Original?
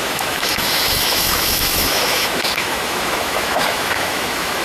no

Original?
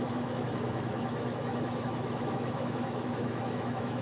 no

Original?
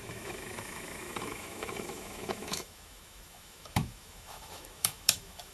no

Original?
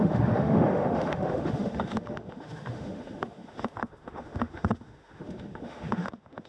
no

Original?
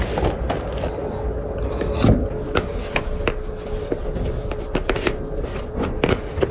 yes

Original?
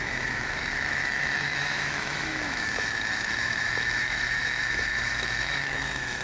no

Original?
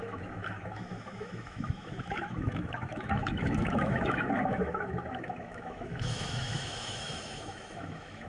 no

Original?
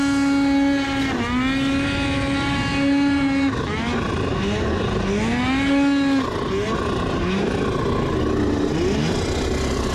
yes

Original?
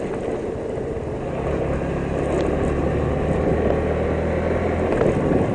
yes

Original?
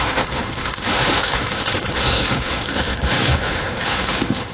no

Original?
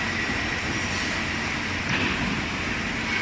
yes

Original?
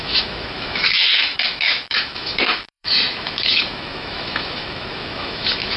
no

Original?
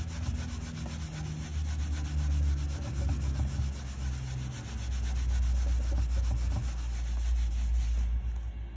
yes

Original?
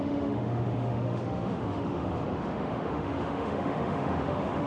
no